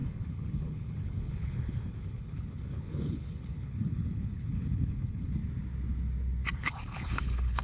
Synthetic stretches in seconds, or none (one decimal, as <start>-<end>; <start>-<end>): 0.0-5.4; 6.6-7.6

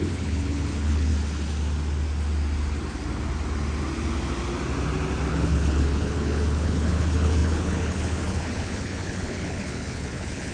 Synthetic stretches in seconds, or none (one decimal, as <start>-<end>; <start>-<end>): 0.0-1.1; 5.3-10.5

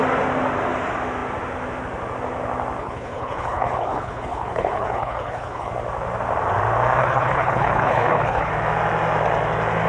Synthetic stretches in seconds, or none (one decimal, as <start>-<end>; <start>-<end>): 2.8-5.7; 7.0-8.5

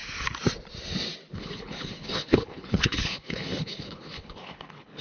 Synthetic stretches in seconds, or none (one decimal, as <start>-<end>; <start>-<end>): 1.3-5.0

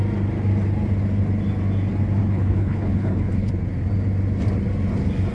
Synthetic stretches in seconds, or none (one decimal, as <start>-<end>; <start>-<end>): 2.2-3.5